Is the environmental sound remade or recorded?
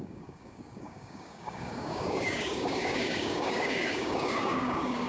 remade